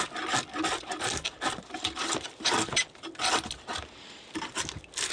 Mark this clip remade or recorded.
recorded